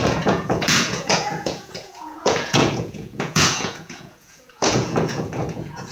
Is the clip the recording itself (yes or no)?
no